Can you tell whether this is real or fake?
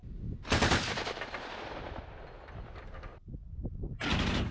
real